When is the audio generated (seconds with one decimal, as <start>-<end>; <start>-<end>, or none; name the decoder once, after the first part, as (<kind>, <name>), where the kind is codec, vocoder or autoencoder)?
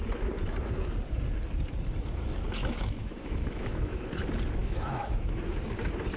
2.6-4.0 (autoencoder, DAC-VAE); 4.6-5.4